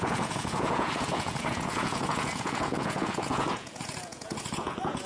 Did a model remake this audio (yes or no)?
yes